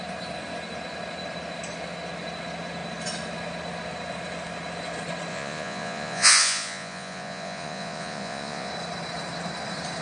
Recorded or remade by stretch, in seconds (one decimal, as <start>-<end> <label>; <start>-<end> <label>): 0.0-5.3 recorded; 5.3-8.7 remade; 8.7-10.0 recorded